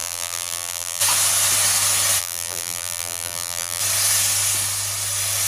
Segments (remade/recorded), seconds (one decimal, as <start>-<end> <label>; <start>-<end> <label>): 0.0-1.0 remade; 1.0-2.2 recorded; 2.2-3.8 remade; 3.8-5.5 recorded